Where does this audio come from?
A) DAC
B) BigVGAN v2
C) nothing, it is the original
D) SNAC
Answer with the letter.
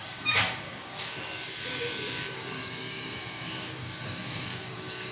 A